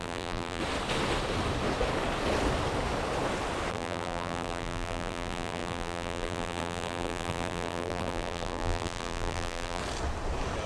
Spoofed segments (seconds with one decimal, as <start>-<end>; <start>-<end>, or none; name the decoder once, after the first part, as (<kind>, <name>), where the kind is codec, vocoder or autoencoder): 0.0-0.6 (vocoder, BigVGAN v2); 3.7-9.8